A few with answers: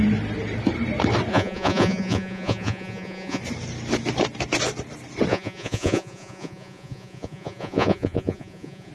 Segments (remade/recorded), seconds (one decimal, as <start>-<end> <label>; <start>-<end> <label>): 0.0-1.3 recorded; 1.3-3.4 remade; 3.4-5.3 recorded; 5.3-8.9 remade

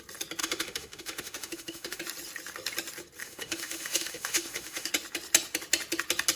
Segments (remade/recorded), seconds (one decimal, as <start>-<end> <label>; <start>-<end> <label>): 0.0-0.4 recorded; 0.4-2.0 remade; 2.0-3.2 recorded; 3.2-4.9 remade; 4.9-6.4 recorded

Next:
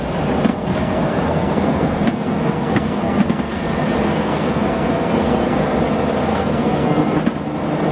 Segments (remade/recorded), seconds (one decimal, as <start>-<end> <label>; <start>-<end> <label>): 0.0-0.5 recorded; 0.5-3.6 remade; 3.6-4.0 recorded; 4.0-5.6 remade; 5.6-6.3 recorded; 6.3-7.2 remade; 7.2-7.9 recorded